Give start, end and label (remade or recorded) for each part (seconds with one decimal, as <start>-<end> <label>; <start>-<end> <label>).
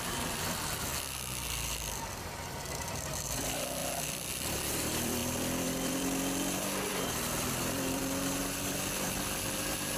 0.0-0.9 remade; 0.9-2.2 recorded; 2.2-10.0 remade